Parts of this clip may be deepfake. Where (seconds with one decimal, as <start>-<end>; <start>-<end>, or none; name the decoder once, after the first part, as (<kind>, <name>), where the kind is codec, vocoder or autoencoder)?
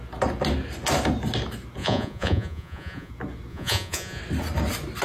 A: 1.8-3.1 (vocoder, Vocos); 3.5-4.2